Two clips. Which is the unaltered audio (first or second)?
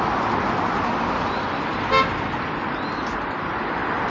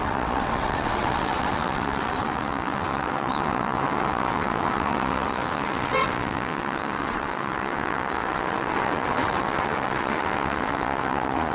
first